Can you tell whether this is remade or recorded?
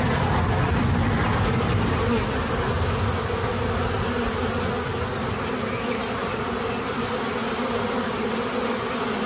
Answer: recorded